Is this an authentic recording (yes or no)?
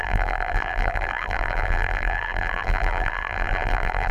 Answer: no